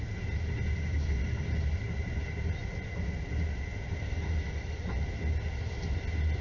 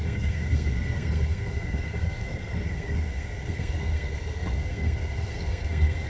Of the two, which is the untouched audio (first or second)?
first